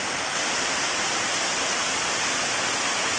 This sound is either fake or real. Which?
real